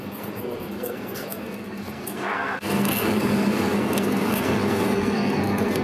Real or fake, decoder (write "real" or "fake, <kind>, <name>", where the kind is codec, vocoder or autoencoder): fake, codec, SNAC